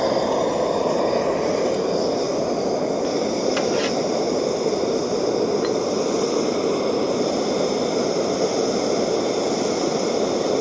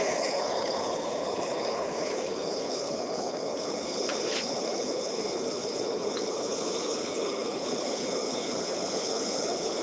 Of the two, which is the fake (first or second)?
second